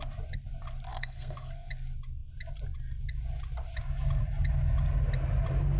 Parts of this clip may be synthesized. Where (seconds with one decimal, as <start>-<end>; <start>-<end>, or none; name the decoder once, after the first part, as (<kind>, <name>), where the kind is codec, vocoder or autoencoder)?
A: 0.9-1.7 (codec, SNAC)